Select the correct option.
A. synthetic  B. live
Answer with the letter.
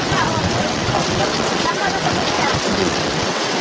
A